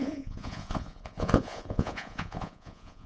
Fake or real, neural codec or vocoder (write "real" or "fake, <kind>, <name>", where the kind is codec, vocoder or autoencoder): fake, vocoder, Vocos